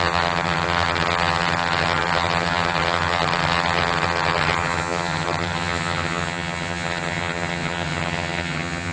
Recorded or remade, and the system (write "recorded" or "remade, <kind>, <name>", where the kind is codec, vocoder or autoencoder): remade, vocoder, HiFi-GAN